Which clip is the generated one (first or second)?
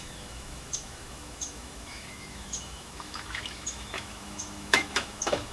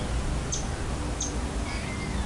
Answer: first